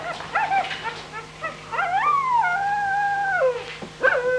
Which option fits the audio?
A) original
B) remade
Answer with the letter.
A